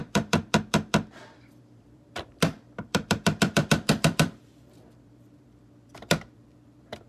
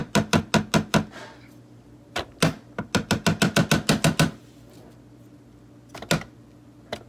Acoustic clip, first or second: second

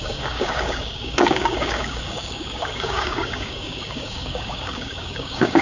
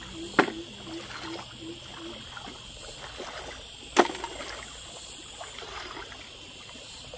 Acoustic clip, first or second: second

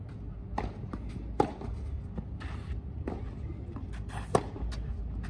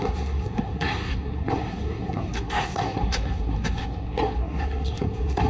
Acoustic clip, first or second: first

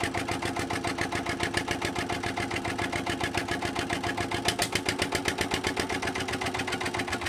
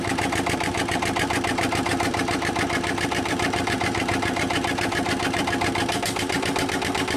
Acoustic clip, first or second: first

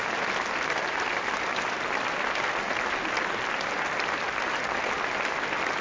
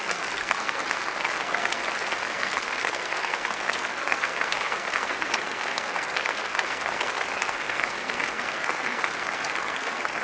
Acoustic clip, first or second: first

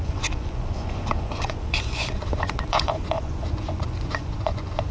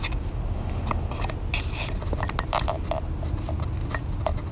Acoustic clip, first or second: second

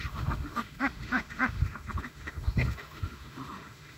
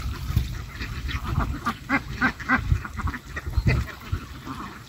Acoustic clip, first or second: second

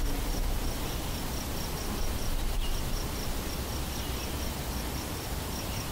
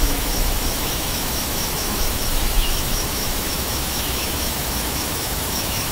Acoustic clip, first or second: first